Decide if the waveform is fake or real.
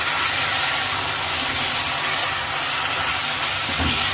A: real